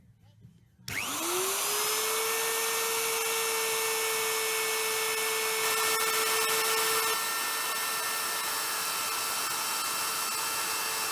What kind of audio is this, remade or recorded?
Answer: recorded